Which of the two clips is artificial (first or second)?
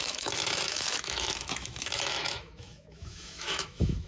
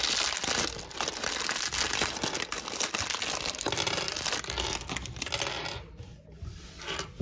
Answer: first